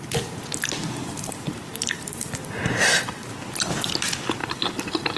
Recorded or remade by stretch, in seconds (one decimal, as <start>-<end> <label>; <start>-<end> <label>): 0.0-1.0 recorded; 1.0-3.3 remade; 3.3-4.4 recorded; 4.4-5.2 remade